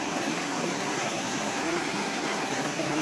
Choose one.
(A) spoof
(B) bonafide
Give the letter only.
A